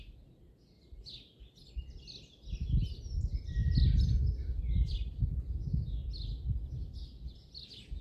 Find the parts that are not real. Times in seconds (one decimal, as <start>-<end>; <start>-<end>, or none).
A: none